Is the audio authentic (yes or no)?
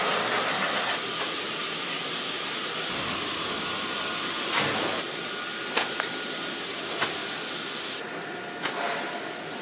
yes